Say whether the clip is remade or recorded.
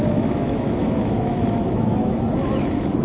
remade